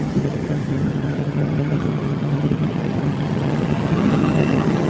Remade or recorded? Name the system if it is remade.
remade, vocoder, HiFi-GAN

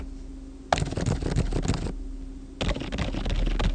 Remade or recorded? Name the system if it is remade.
recorded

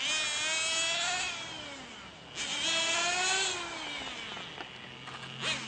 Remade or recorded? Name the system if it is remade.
recorded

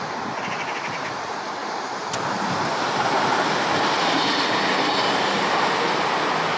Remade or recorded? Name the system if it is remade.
recorded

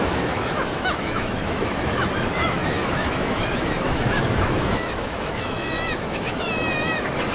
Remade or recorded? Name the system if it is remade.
remade, autoencoder, DAC-VAE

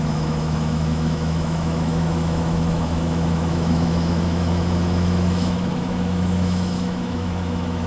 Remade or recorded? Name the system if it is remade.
remade, autoencoder, DAC-VAE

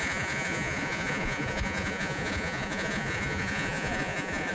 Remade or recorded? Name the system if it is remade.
remade, vocoder, Vocos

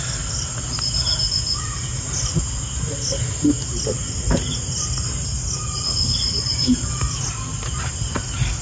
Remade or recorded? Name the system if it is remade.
recorded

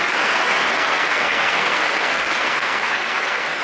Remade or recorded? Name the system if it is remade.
remade, codec, SNAC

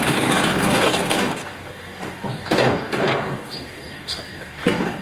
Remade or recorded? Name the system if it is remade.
remade, codec, DAC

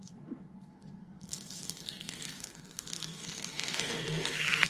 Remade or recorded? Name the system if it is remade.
remade, codec, SNAC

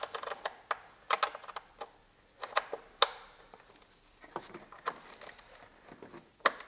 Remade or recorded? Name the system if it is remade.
recorded